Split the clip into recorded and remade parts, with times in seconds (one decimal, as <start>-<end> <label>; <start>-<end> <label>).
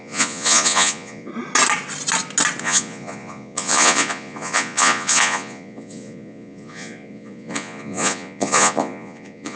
0.0-1.3 remade; 1.3-2.6 recorded; 2.6-9.6 remade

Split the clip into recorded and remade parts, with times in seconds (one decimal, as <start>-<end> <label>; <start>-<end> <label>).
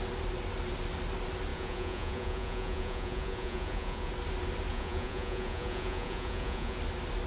0.0-1.5 recorded; 1.5-4.1 remade; 4.1-4.7 recorded; 4.7-6.8 remade; 6.8-7.3 recorded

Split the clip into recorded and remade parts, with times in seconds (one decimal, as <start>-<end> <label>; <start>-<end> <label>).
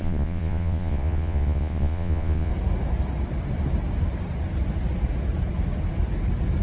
0.0-2.5 remade; 2.5-6.6 recorded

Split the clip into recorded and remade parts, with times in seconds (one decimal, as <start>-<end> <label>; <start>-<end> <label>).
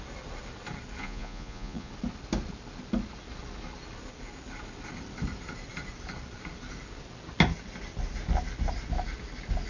0.0-1.0 recorded; 1.0-1.9 remade; 1.9-9.7 recorded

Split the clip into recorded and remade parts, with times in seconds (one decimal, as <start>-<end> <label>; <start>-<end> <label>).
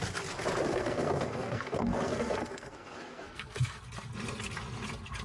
0.0-0.7 recorded; 0.7-3.8 remade; 3.8-5.2 recorded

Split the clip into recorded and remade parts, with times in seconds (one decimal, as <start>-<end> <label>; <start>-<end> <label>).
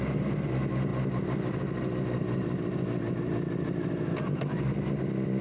0.0-5.4 recorded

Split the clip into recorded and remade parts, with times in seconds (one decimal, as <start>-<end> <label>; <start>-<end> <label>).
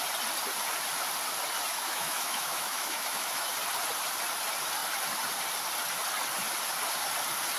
0.0-1.7 recorded; 1.7-3.5 remade; 3.5-7.6 recorded